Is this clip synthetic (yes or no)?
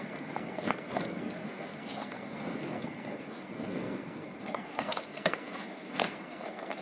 yes